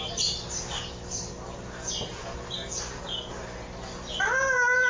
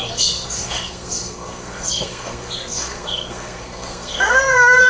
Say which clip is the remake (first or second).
second